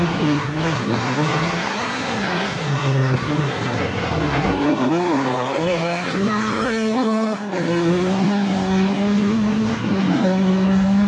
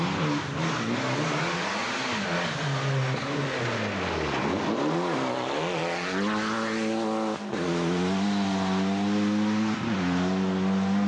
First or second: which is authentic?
second